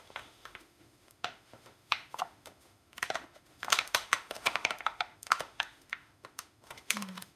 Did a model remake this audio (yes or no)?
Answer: yes